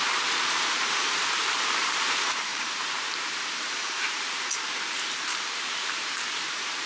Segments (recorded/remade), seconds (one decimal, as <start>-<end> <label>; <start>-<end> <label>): 0.0-6.9 remade